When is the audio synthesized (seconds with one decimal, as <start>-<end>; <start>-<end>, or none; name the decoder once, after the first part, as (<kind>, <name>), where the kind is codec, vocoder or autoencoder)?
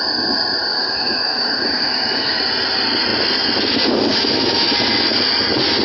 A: 0.7-2.4 (autoencoder, DAC-VAE); 4.1-4.7